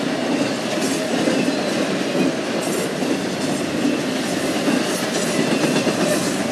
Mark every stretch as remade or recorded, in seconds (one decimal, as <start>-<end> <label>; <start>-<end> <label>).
0.0-6.5 recorded